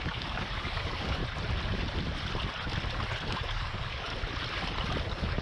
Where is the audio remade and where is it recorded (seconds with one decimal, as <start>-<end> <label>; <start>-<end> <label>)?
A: 0.0-1.2 remade; 1.2-3.3 recorded; 3.3-4.1 remade; 4.1-5.0 recorded; 5.0-5.4 remade